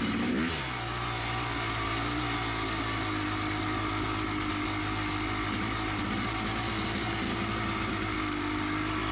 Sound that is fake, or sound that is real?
real